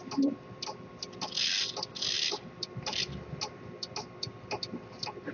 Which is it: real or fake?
real